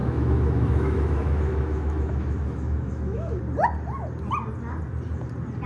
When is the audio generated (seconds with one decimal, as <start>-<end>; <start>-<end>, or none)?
0.0-3.4